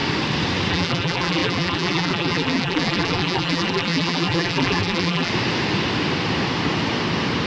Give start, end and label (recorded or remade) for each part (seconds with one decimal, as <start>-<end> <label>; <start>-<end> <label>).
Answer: 0.0-0.7 recorded; 0.7-5.3 remade; 5.3-7.5 recorded